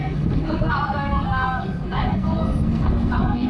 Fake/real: fake